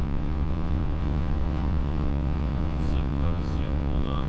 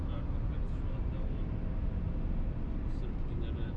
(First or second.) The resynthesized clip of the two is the first